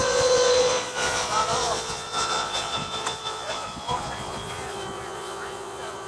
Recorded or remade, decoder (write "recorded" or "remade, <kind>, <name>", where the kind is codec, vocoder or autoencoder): remade, vocoder, Vocos